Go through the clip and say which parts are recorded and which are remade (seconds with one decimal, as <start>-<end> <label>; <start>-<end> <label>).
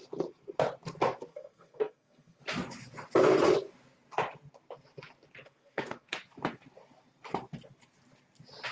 0.0-1.3 recorded; 1.3-2.4 remade; 2.4-5.4 recorded; 5.4-6.1 remade; 6.1-8.7 recorded